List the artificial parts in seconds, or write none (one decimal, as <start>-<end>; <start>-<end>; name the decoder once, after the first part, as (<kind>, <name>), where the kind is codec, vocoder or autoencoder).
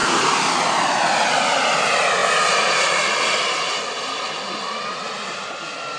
none